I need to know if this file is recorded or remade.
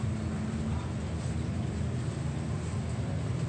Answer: recorded